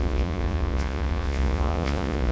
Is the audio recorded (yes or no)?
no